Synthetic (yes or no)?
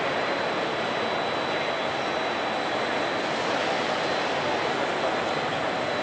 no